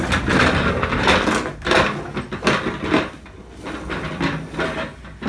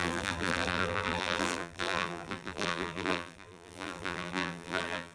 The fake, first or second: second